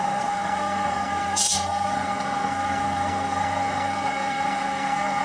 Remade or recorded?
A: remade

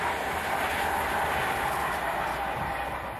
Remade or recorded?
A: recorded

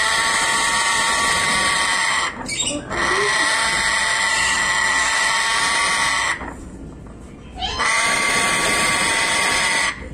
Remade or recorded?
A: recorded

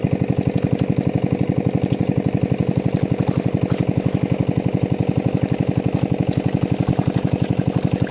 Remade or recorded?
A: recorded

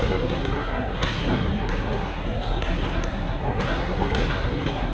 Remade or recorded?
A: remade